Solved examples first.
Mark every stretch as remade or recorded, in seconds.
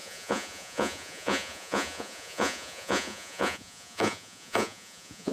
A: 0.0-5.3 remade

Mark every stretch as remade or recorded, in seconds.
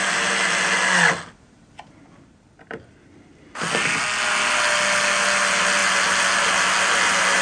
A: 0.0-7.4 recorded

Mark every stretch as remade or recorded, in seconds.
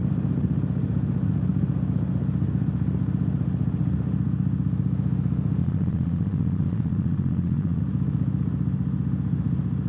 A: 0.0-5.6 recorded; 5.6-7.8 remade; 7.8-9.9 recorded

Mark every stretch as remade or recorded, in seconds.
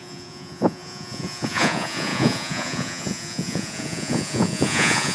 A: 0.0-5.1 remade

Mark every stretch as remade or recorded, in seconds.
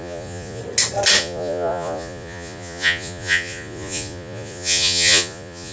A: 0.0-0.6 remade; 0.6-1.2 recorded; 1.2-5.7 remade